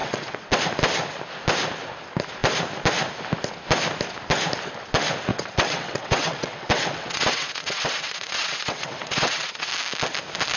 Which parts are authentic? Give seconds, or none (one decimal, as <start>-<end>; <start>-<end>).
0.6-5.3; 9.7-10.6

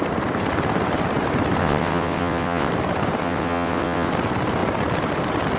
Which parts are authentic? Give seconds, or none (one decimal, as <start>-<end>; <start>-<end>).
0.0-1.6; 2.7-3.2; 4.1-5.6

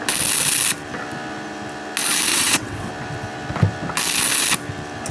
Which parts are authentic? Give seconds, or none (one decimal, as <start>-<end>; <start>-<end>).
0.0-2.3; 2.9-5.1

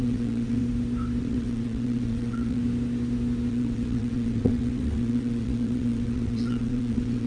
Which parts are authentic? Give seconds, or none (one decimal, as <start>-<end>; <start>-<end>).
0.6-1.2; 2.6-3.5

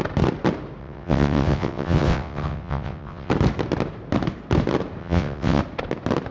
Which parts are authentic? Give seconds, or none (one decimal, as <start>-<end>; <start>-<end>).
0.0-0.8; 3.3-5.0; 5.6-6.3

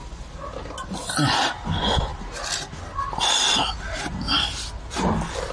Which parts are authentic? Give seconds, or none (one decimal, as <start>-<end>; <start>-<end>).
0.0-5.5

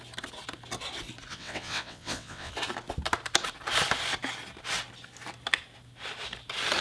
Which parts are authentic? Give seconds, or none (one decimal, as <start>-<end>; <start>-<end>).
0.0-1.3; 2.5-6.8